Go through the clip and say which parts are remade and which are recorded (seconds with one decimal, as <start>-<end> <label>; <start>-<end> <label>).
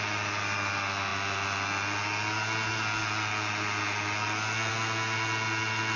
0.0-6.0 recorded